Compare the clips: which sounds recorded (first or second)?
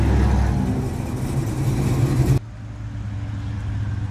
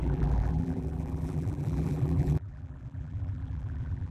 first